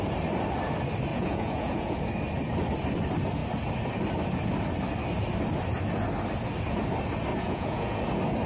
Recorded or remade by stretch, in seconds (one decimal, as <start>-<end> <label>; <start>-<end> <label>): 0.0-1.1 recorded; 1.1-2.0 remade; 2.0-7.3 recorded; 7.3-8.0 remade; 8.0-8.5 recorded